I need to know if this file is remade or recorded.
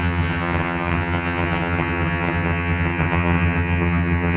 remade